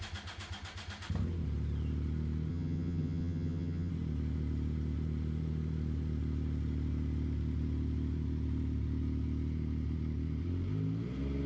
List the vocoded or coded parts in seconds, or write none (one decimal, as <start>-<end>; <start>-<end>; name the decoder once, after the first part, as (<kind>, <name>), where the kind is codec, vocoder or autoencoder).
2.5-3.9 (vocoder, HiFi-GAN)